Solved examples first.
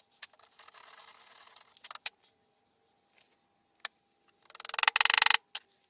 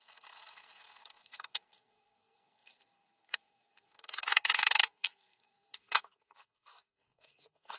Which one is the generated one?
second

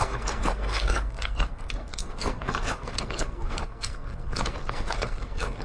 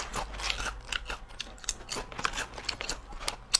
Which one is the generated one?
first